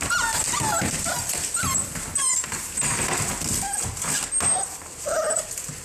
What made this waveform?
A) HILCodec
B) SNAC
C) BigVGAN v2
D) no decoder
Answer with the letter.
D